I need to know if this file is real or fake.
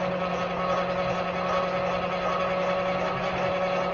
real